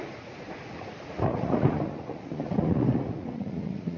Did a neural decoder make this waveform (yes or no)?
yes